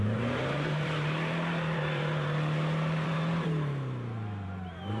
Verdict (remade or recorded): remade